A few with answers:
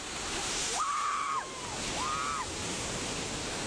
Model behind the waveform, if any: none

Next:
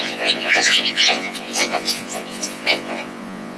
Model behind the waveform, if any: vocoder, Vocos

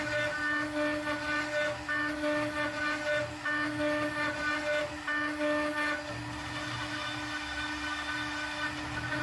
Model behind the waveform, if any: none